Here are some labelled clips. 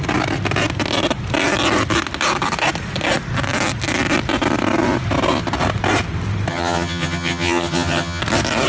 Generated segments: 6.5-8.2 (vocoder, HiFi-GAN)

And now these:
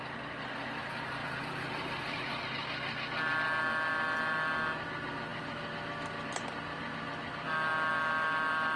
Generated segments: 1.2-2.4 (vocoder, BigVGAN v2)

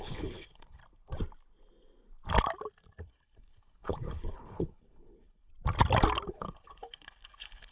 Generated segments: 0.0-0.8 (codec, HILCodec); 3.0-5.5; 6.3-7.7

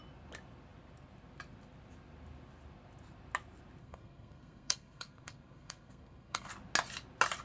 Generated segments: 3.8-6.5 (codec, SNAC)

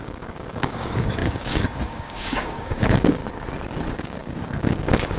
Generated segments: 0.0-3.2 (codec, DAC); 3.9-5.2

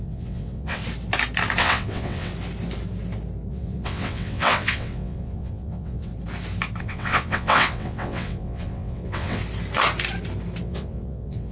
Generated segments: 0.0-0.8 (vocoder, WaveNeXt); 1.6-2.3; 3.5-6.1; 6.8-9.4; 10.6-11.5

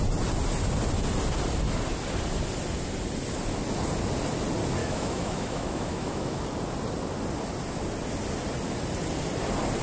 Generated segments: 4.8-6.4 (autoencoder, DAC-VAE)